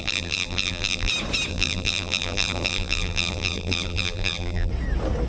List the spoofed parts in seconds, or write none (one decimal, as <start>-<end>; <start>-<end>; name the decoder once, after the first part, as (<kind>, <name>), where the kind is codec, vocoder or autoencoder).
0.0-1.1 (vocoder, BigVGAN v2); 1.5-4.7